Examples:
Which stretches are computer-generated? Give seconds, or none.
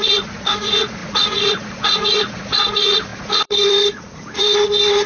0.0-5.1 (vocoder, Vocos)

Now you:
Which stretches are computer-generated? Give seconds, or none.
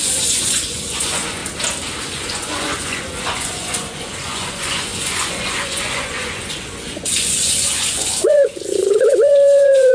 0.0-1.4 (vocoder, Vocos); 2.0-9.9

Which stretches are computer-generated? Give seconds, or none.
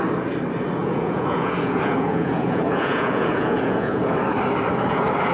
0.8-4.0 (vocoder, Vocos)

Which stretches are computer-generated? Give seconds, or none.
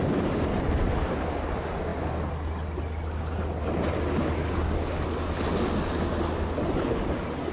none